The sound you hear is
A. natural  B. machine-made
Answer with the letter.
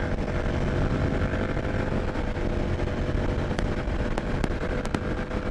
A